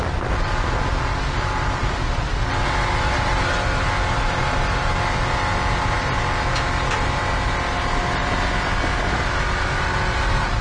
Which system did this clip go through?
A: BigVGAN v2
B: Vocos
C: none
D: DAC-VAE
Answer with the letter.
C